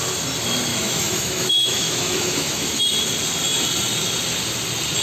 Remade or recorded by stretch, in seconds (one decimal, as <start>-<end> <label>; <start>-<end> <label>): 0.0-0.7 recorded; 0.7-2.8 remade; 2.8-5.0 recorded

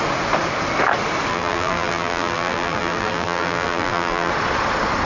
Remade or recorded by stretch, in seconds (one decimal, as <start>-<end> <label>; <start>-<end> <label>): 0.0-1.3 recorded; 1.3-4.3 remade; 4.3-5.0 recorded

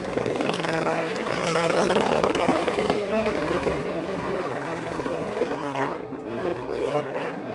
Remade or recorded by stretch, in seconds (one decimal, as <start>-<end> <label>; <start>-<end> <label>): 0.0-7.5 remade

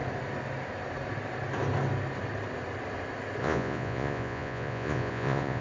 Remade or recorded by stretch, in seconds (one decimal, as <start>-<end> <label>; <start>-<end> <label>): 0.0-3.4 recorded; 3.4-5.6 remade

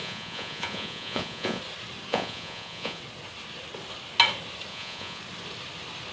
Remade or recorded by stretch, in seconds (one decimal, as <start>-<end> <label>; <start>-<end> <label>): 0.0-1.6 remade; 1.6-2.1 recorded; 2.1-3.0 remade; 3.0-4.7 recorded; 4.7-5.2 remade; 5.2-6.1 recorded

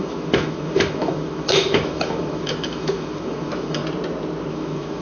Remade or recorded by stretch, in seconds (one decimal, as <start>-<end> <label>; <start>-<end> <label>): 0.0-3.8 remade; 3.8-4.5 recorded; 4.5-5.0 remade

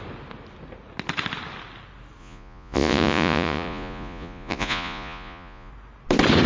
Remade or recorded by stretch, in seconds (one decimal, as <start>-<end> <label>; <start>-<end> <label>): 0.0-2.2 recorded; 2.2-5.7 remade; 5.7-6.5 recorded

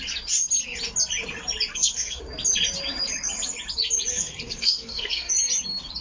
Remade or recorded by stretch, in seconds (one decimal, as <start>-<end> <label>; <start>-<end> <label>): 0.0-1.7 recorded; 1.7-2.2 remade; 2.2-4.1 recorded; 4.1-5.3 remade; 5.3-6.0 recorded